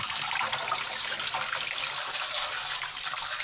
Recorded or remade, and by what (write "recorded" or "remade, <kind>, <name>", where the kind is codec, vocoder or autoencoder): recorded